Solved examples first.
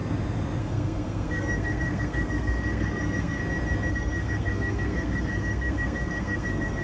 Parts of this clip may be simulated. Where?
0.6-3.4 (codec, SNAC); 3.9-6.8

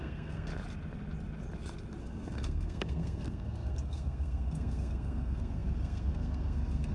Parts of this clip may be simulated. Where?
0.0-0.5 (codec, SNAC); 2.0-6.9

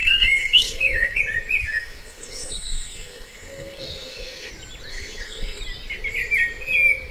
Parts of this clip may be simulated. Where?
0.0-1.2 (codec, SNAC); 1.6-4.5; 4.9-5.6

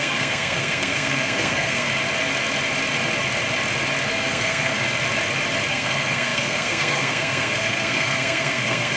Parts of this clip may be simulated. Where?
0.0-1.9 (codec, SNAC); 4.1-4.7; 5.7-9.0

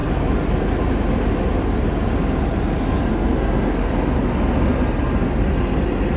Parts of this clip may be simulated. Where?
3.1-3.9 (codec, SNAC)